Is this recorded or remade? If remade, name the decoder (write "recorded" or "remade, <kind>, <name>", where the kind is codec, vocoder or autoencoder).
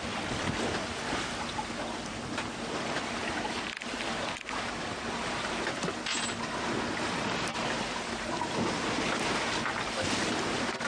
recorded